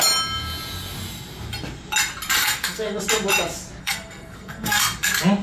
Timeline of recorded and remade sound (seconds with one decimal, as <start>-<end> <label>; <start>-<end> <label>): 0.0-2.4 recorded; 2.4-3.0 remade; 3.0-3.8 recorded; 3.8-4.8 remade; 4.8-5.4 recorded